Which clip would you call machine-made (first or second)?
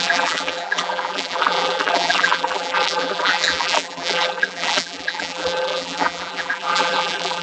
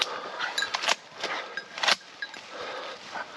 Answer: first